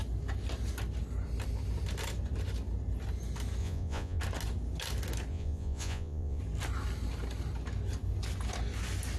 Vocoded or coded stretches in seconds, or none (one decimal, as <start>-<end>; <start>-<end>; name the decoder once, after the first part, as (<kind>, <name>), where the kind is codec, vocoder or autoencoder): 3.6-4.2 (vocoder, Vocos); 5.3-6.4